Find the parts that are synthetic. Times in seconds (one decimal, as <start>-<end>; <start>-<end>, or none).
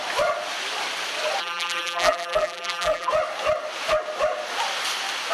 1.4-3.1